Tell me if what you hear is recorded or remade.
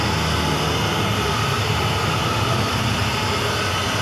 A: recorded